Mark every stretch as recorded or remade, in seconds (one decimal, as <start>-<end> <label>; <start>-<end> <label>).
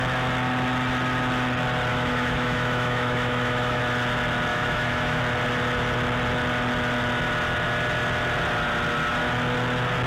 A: 0.0-1.9 recorded; 1.9-3.8 remade; 3.8-4.5 recorded; 4.5-5.2 remade; 5.2-10.1 recorded